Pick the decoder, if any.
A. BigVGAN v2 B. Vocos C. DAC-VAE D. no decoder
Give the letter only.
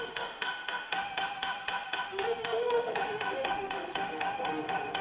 C